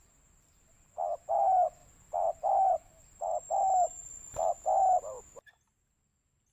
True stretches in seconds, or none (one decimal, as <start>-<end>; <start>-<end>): 0.0-4.0; 4.5-6.5